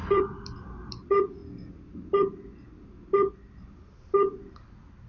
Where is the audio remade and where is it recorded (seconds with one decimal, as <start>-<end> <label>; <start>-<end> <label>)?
0.0-1.4 remade; 1.4-4.5 recorded; 4.5-5.1 remade